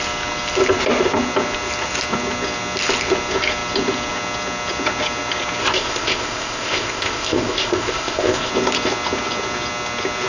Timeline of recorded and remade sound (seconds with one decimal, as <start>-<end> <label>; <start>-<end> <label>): 0.0-5.6 recorded; 5.6-8.5 remade; 8.5-10.3 recorded